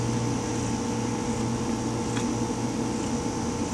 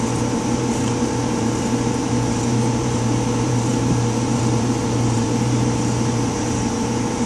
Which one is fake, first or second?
second